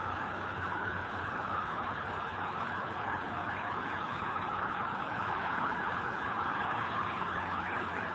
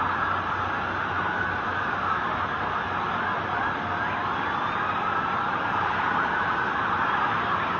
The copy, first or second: first